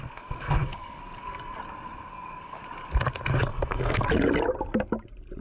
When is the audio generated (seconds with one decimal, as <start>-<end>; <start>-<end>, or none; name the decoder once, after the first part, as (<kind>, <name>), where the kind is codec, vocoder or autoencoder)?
0.0-1.6 (codec, SNAC); 2.1-2.6; 3.5-4.1

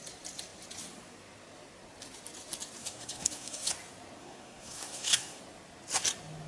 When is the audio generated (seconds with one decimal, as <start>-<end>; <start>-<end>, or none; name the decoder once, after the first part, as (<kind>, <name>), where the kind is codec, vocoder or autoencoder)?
2.8-3.7 (codec, SNAC); 4.2-5.4